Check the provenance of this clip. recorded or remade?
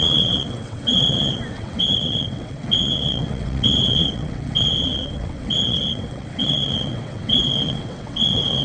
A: remade